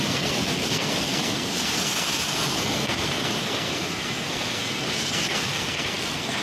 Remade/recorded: remade